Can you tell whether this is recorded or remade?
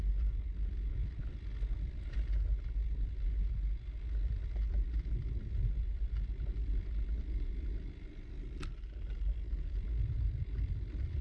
recorded